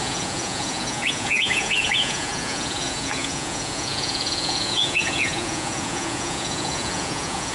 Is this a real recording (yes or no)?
no